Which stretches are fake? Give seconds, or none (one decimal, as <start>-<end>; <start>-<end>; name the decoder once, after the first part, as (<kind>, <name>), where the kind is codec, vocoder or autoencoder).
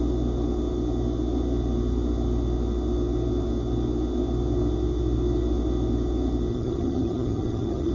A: 6.5-7.9 (vocoder, HiFi-GAN)